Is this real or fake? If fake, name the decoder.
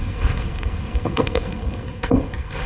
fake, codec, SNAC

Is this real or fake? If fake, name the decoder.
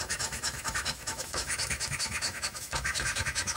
fake, autoencoder, DAC-VAE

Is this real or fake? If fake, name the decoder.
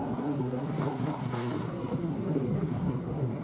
fake, codec, SNAC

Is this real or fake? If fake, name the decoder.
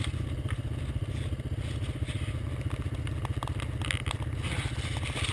real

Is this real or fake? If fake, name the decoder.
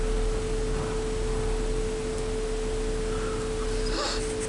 real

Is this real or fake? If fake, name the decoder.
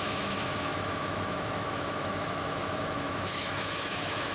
fake, autoencoder, DAC-VAE